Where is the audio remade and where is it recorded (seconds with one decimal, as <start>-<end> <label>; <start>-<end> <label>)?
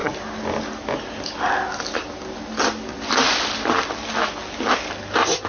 0.0-5.5 recorded